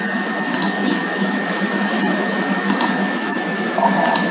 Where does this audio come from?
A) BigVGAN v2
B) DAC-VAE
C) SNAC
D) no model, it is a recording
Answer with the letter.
B